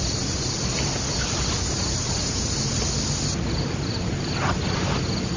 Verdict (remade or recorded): recorded